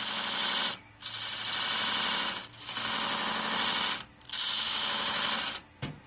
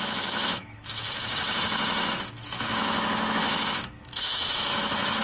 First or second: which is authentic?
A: first